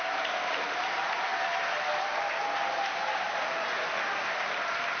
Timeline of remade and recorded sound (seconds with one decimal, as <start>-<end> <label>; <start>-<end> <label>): 0.0-5.0 recorded